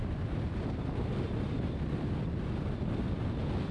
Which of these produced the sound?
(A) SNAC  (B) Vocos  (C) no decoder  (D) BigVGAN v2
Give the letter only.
C